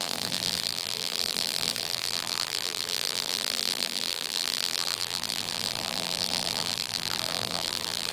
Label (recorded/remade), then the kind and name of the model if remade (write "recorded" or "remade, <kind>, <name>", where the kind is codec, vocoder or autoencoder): remade, vocoder, BigVGAN v2